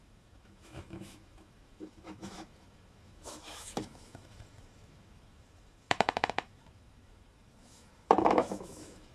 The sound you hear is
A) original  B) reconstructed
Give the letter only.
B